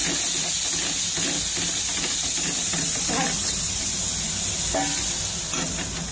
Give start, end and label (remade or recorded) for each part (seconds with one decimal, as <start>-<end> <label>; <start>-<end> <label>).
0.0-6.1 recorded